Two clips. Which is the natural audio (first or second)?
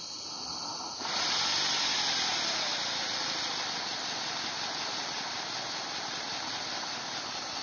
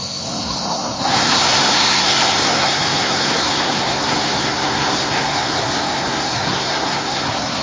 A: first